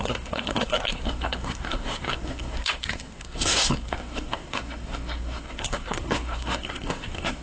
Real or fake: fake